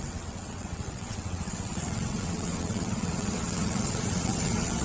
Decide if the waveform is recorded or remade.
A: remade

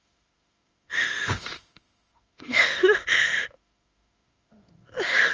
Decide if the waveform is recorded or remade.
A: remade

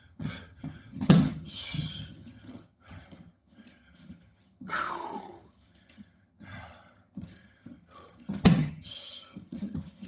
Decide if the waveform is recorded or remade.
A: remade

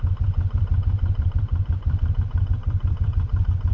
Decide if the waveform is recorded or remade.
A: remade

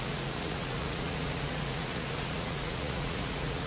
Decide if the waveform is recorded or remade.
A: remade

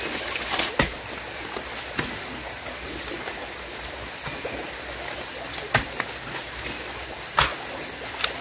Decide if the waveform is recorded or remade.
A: recorded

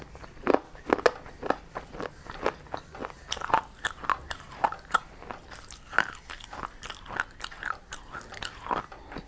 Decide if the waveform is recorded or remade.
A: recorded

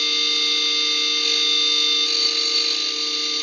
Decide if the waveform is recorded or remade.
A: recorded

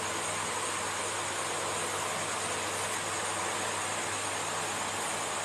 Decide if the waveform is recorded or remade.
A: recorded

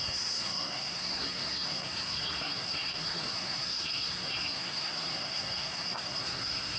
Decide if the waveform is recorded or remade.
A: remade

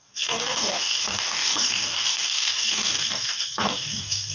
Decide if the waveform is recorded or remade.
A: remade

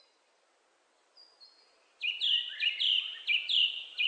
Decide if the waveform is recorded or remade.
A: recorded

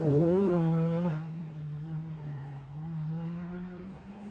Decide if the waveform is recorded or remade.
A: remade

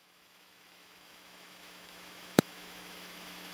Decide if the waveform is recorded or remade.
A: remade